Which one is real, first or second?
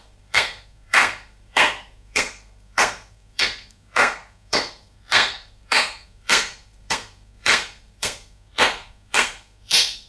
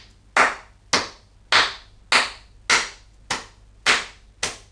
second